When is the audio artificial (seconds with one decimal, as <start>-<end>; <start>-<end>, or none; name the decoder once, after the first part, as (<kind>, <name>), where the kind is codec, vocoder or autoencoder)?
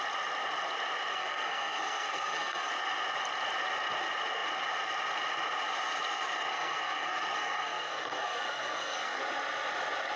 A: 1.1-2.7 (codec, SNAC); 6.5-9.2